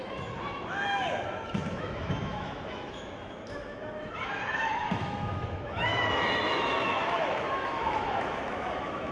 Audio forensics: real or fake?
fake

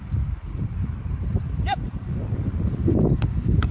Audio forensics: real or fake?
fake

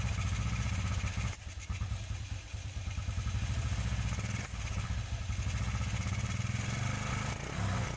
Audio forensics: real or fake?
real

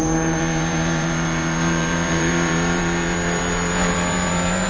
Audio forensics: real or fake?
fake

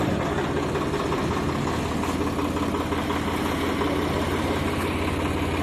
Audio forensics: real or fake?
real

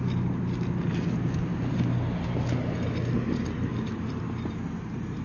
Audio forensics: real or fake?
real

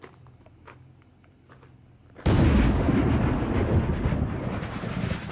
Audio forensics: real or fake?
real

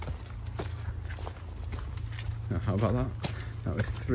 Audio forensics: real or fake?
real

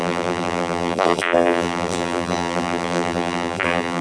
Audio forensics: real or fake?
fake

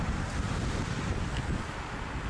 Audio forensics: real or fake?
real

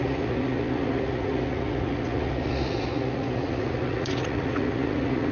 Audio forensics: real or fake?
fake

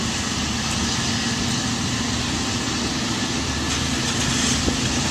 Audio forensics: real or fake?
real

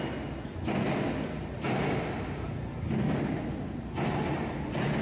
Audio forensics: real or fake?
real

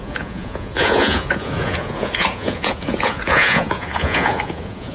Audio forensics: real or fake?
fake